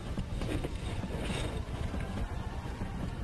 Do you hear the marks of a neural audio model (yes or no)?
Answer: yes